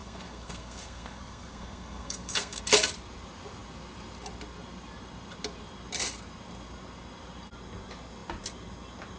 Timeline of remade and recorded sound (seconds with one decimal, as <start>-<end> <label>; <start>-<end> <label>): 0.0-2.6 remade; 2.6-9.2 recorded